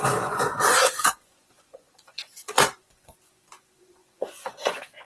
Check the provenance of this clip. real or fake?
fake